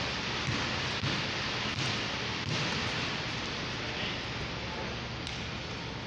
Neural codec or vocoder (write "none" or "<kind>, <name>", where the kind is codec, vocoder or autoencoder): none